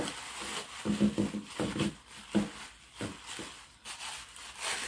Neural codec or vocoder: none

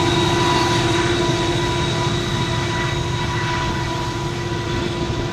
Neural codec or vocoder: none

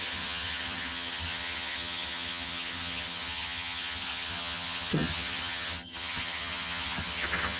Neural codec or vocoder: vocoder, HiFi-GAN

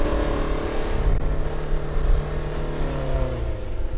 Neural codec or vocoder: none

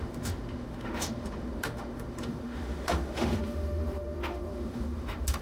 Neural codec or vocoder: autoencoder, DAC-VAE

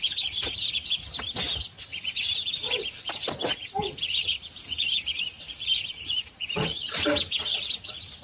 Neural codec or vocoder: none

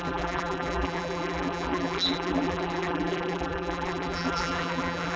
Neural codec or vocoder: vocoder, BigVGAN v2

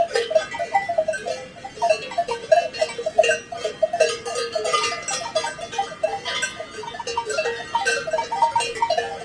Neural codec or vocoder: none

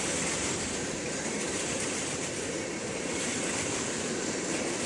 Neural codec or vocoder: vocoder, BigVGAN v2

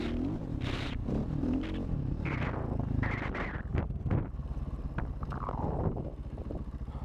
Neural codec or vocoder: vocoder, BigVGAN v2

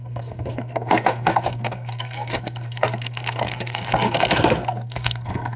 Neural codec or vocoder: codec, SNAC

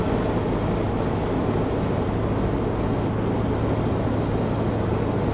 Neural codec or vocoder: none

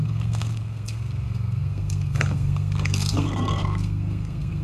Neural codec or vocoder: codec, SNAC